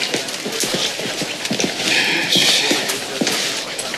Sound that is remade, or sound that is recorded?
recorded